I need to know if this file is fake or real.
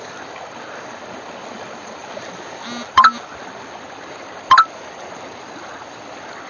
real